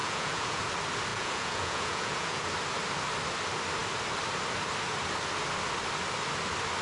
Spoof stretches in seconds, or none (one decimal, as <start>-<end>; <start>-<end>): 0.0-0.6; 1.1-2.4